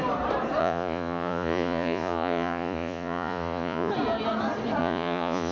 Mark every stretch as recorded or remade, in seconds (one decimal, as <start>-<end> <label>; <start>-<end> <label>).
0.0-0.6 recorded; 0.6-3.9 remade; 3.9-4.8 recorded; 4.8-5.5 remade